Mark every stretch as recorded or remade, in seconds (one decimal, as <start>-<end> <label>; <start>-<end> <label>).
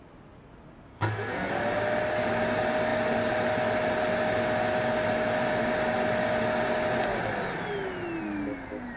0.0-0.9 recorded; 0.9-1.5 remade; 1.5-9.0 recorded